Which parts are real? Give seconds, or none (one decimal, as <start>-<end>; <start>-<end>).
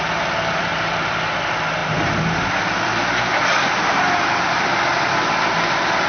0.7-1.4